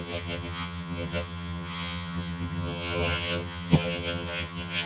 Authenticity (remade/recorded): remade